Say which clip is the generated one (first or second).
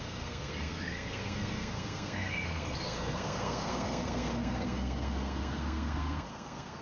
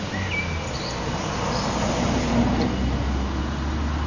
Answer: first